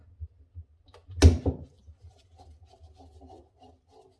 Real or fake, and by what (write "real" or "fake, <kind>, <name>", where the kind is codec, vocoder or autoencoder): real